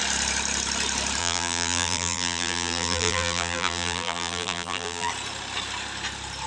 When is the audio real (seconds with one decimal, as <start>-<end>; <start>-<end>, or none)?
0.0-1.2; 5.1-6.5